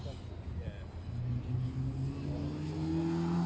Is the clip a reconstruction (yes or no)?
no